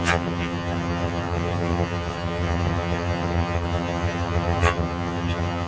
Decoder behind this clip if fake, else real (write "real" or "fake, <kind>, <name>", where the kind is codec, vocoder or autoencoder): fake, vocoder, HiFi-GAN